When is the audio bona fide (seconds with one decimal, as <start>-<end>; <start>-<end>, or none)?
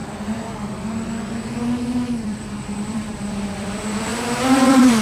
0.0-2.2